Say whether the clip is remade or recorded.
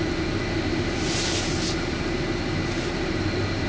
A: recorded